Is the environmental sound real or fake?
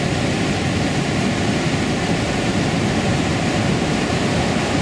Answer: real